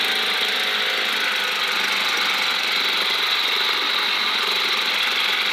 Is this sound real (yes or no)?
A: yes